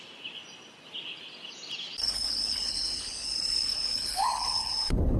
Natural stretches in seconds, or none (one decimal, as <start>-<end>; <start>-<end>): 0.0-2.0

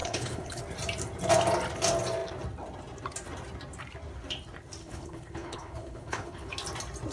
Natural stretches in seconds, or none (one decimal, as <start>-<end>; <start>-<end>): 0.6-4.8; 6.5-7.1